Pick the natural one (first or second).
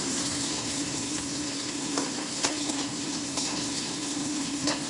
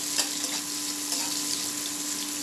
second